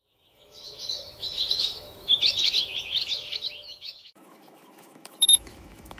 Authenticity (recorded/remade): remade